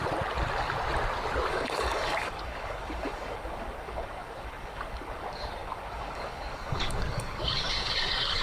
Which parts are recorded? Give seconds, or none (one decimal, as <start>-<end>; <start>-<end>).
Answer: 0.0-1.5